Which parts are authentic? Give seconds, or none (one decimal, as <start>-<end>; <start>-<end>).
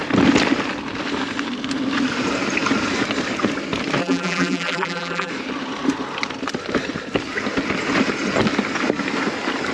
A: 0.0-4.0; 5.3-9.7